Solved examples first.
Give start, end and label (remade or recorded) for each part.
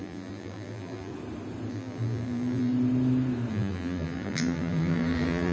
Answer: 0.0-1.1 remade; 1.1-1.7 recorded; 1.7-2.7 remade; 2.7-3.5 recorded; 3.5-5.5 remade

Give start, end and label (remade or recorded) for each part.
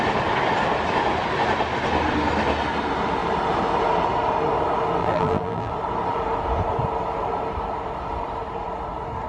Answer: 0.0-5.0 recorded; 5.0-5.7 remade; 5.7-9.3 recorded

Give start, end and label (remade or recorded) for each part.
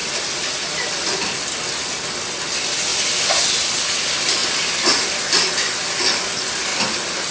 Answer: 0.0-1.4 remade; 1.4-2.9 recorded; 2.9-3.4 remade; 3.4-4.4 recorded; 4.4-5.5 remade; 5.5-7.3 recorded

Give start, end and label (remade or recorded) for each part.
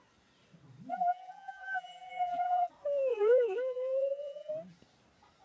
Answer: 0.0-0.9 recorded; 0.9-2.7 remade; 2.7-3.1 recorded; 3.1-4.5 remade; 4.5-5.4 recorded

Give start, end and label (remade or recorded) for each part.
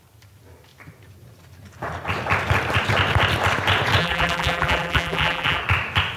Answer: 0.0-4.0 recorded; 4.0-5.6 remade; 5.6-6.2 recorded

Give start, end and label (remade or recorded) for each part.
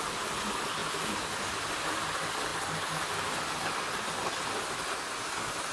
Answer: 0.0-5.7 recorded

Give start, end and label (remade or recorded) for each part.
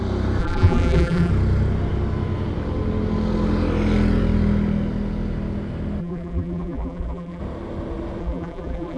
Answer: 0.0-0.4 recorded; 0.4-1.3 remade; 1.3-6.0 recorded; 6.0-7.4 remade; 7.4-8.2 recorded; 8.2-9.0 remade